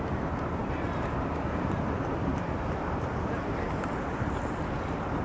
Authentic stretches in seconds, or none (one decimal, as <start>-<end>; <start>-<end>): 0.0-2.3; 4.6-5.2